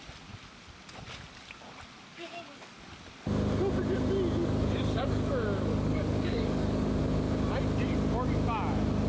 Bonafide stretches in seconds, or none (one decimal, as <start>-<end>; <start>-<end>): 0.0-2.1; 2.7-4.4; 7.0-9.1